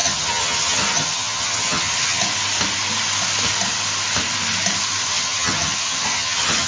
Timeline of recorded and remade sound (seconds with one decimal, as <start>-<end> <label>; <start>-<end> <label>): 0.0-2.2 remade; 2.2-5.0 recorded; 5.0-6.7 remade